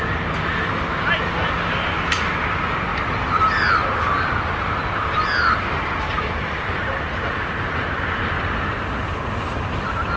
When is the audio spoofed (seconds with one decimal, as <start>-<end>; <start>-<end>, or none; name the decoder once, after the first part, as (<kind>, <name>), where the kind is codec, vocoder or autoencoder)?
none